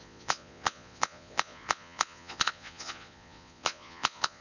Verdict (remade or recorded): remade